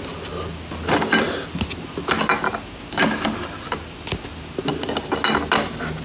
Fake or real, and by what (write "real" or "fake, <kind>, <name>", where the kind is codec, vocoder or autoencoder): real